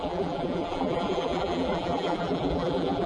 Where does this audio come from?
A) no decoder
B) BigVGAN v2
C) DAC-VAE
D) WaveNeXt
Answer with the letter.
B